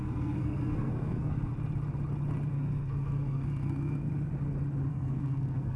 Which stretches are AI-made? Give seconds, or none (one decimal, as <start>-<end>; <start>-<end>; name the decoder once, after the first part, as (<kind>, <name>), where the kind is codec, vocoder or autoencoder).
0.0-1.5 (codec, SNAC); 2.5-4.1; 4.9-5.8